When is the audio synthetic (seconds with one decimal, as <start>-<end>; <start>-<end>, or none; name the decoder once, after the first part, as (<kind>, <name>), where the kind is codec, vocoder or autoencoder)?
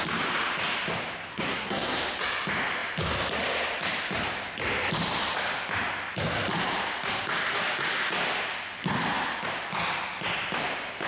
1.3-2.0 (codec, SNAC)